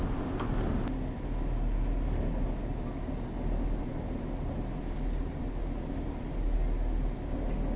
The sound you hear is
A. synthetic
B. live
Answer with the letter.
B